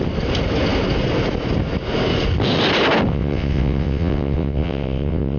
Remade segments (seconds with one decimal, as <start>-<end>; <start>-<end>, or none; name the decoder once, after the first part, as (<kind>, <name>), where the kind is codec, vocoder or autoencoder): 3.1-5.4 (vocoder, WaveNeXt)